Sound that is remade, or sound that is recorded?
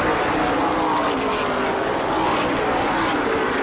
recorded